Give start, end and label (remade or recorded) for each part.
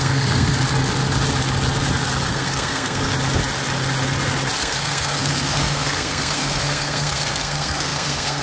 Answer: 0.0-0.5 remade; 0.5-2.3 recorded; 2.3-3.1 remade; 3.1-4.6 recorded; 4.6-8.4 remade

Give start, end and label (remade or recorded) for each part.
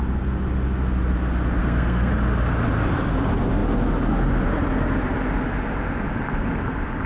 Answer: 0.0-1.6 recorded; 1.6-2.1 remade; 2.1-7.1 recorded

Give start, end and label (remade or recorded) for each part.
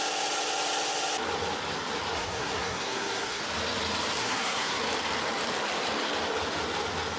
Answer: 0.0-2.1 recorded; 2.1-3.4 remade; 3.4-4.2 recorded; 4.2-4.8 remade; 4.8-7.2 recorded